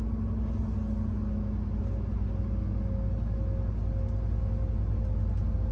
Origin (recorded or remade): recorded